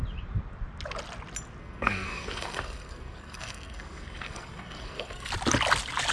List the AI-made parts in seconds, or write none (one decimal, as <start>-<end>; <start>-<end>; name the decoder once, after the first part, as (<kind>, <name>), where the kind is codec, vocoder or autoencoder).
1.6-5.3 (codec, SNAC)